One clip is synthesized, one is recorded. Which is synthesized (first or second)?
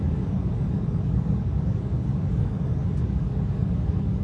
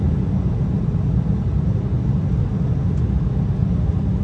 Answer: first